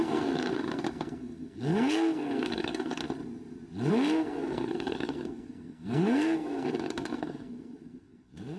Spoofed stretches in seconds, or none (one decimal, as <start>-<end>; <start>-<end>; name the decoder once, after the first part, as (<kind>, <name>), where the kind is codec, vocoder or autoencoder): 0.0-3.0 (codec, SNAC); 3.9-8.6

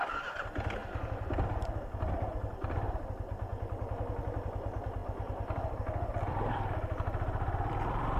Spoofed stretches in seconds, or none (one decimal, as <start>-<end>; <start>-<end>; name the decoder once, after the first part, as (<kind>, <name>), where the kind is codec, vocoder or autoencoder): 0.0-0.8 (vocoder, BigVGAN v2); 2.0-3.5; 4.2-8.2